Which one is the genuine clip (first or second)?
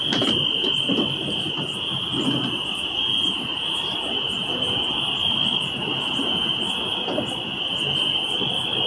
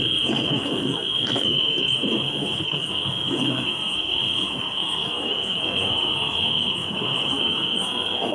first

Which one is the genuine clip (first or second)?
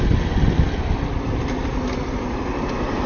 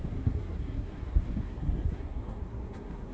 first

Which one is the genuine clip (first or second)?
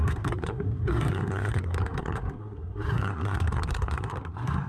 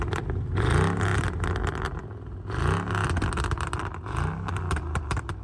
second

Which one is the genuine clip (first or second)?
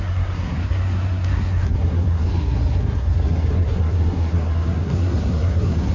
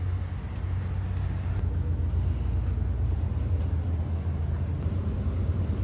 second